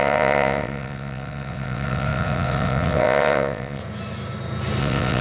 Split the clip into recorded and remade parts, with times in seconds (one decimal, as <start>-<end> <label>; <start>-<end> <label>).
0.0-3.8 remade; 3.8-4.8 recorded; 4.8-5.2 remade